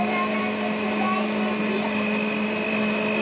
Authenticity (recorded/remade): recorded